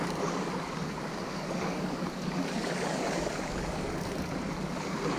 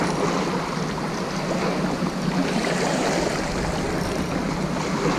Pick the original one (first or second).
second